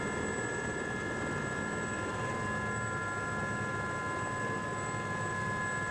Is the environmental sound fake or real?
real